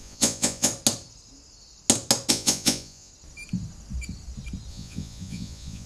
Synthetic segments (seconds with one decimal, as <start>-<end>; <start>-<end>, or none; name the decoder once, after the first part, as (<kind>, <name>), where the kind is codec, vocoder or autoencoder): 0.0-0.7 (vocoder, Vocos); 2.3-3.1; 4.7-5.9